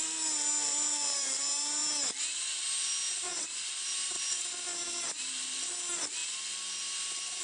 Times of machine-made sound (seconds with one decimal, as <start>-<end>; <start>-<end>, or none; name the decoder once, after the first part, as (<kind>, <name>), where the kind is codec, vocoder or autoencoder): none